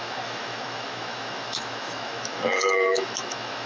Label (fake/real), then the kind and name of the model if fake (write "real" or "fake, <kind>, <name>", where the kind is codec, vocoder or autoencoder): fake, autoencoder, DAC-VAE